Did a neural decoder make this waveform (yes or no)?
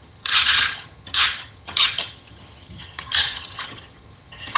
yes